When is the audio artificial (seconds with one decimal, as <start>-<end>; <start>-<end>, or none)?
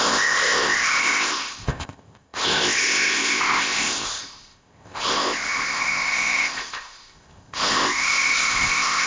0.0-9.1